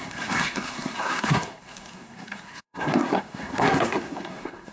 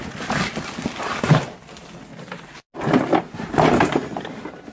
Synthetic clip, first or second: first